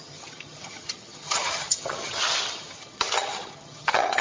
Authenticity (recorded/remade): remade